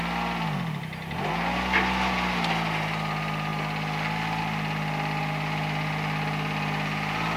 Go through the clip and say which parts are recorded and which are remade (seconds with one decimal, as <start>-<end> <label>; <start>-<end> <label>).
0.0-7.4 recorded